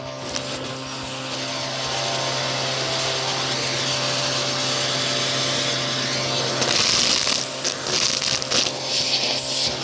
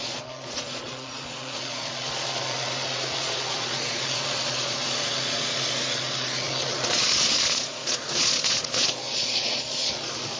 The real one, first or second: first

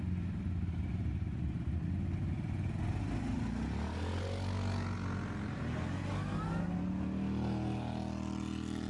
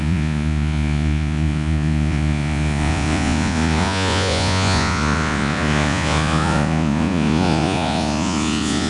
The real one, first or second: first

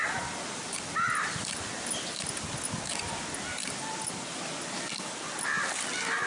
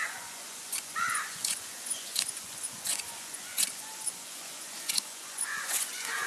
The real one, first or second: first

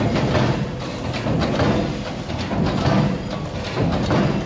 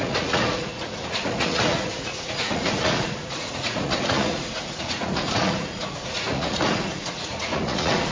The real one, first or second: first